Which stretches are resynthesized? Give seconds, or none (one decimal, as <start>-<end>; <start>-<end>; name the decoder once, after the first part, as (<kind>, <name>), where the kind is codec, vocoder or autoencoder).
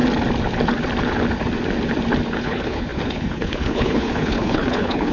2.4-5.1 (codec, HILCodec)